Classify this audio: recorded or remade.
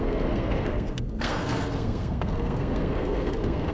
remade